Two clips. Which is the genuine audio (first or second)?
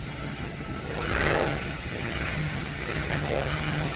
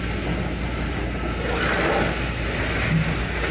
second